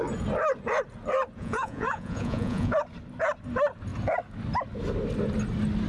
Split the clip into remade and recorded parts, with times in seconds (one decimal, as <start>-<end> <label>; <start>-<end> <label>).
0.0-1.4 recorded; 1.4-2.7 remade; 2.7-5.9 recorded